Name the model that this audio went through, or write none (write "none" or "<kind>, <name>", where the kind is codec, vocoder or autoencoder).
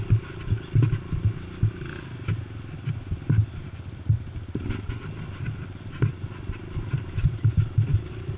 none